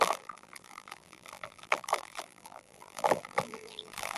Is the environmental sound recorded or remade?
remade